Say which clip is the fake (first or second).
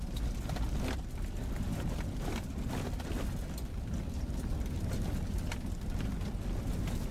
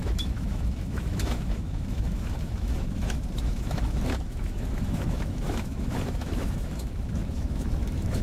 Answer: second